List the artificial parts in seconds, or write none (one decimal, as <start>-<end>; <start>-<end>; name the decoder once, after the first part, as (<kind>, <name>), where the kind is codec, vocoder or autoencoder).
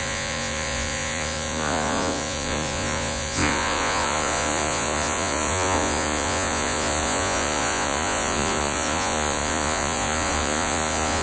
0.0-11.2 (vocoder, Vocos)